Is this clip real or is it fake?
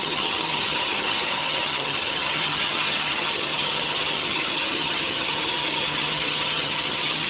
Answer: fake